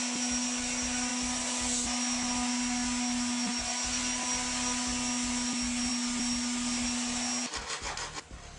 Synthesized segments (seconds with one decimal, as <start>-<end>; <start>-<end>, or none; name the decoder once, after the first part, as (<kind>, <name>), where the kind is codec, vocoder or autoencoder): none